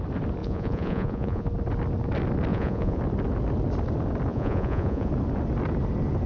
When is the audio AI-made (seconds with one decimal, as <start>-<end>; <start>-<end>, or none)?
0.4-1.5; 2.5-3.0; 4.3-5.1